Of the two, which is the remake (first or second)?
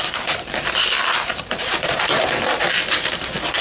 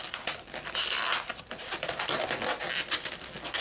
first